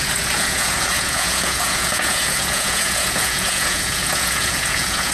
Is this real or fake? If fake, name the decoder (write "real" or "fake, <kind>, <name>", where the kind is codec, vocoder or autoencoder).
fake, vocoder, Vocos